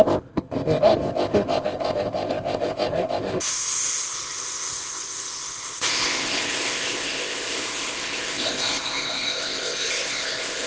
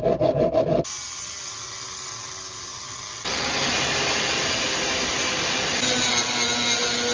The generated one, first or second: first